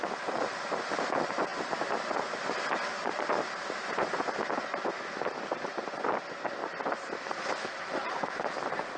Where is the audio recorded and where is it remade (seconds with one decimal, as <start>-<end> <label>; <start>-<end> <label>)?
0.0-1.5 recorded; 1.5-2.1 remade; 2.1-6.6 recorded; 6.6-8.5 remade; 8.5-9.0 recorded